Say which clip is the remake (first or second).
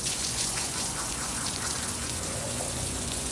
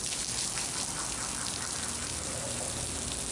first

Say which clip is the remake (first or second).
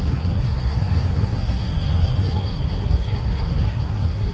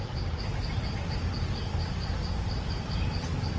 first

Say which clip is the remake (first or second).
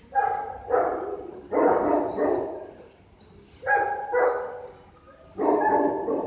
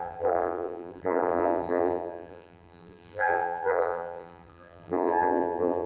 second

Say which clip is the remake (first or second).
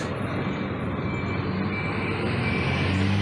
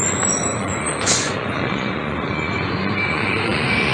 second